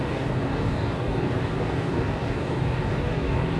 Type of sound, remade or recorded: remade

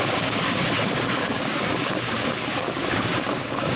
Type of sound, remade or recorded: remade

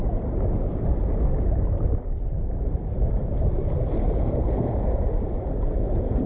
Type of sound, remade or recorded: recorded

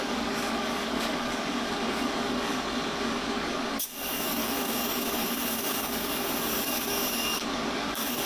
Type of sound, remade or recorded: remade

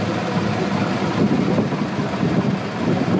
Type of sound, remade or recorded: recorded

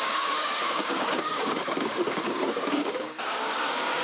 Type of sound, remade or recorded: remade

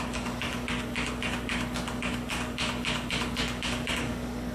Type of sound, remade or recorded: remade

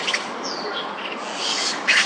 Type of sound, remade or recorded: remade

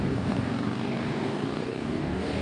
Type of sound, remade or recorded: remade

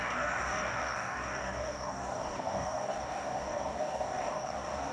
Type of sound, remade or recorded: remade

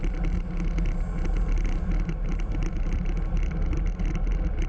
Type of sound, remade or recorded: recorded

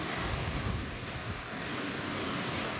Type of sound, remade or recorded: remade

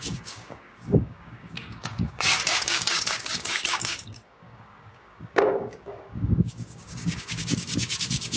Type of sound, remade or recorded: remade